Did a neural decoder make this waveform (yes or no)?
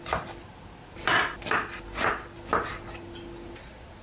no